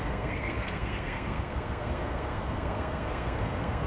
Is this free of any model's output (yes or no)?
no